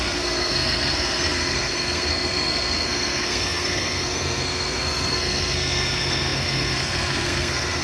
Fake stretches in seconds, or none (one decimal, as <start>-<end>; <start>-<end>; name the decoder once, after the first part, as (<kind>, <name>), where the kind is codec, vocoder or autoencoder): 0.0-7.8 (codec, SNAC)